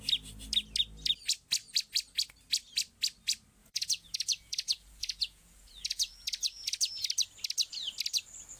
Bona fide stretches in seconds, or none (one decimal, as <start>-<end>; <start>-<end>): 0.0-3.6; 6.9-8.6